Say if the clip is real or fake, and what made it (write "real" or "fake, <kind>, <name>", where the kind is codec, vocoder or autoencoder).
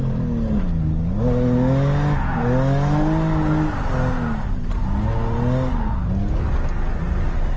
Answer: real